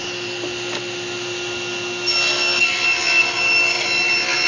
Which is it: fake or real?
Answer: real